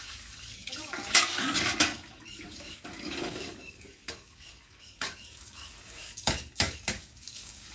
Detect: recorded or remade remade